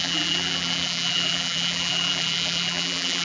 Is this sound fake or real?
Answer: fake